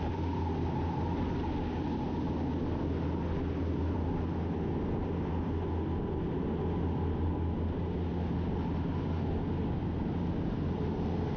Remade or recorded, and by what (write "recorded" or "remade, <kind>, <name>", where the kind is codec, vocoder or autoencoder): recorded